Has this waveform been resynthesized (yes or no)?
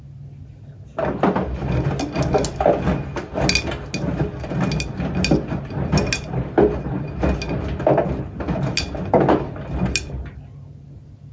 no